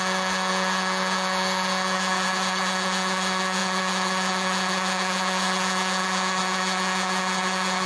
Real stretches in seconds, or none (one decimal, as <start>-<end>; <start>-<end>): none